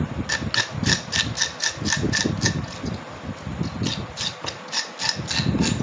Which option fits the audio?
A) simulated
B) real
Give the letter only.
B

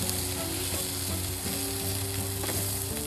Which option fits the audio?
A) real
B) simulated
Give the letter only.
A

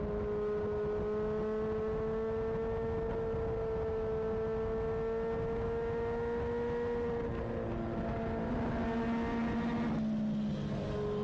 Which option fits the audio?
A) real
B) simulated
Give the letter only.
A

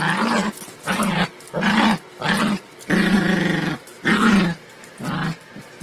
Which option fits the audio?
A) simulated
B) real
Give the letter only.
B